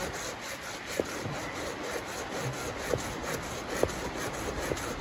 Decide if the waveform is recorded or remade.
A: recorded